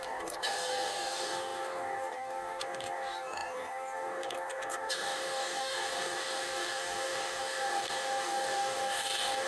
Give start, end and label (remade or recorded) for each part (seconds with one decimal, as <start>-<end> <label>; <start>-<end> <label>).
0.0-9.5 remade